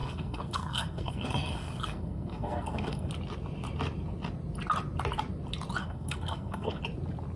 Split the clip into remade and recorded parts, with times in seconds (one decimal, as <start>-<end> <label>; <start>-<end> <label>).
0.0-3.1 remade; 3.1-5.8 recorded; 5.8-6.8 remade; 6.8-7.4 recorded